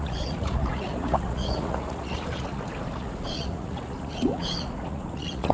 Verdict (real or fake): fake